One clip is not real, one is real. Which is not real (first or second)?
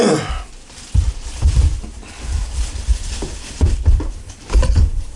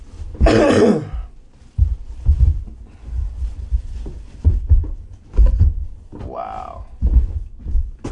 first